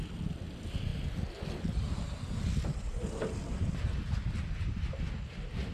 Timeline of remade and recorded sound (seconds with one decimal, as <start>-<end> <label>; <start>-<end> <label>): 0.0-5.7 recorded